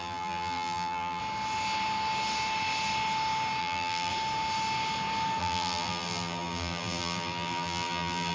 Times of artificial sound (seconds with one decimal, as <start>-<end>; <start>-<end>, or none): 0.0-1.2; 3.6-4.1; 5.4-8.3